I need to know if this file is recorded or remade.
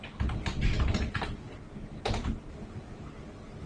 recorded